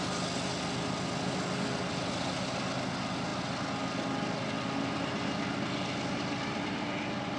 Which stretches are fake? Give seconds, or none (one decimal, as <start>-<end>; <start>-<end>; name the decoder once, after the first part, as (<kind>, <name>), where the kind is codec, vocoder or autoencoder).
none